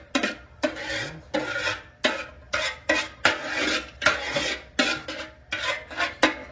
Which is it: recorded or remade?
recorded